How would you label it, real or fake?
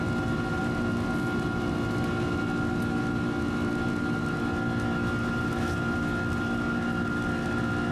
real